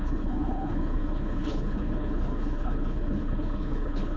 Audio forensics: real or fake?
fake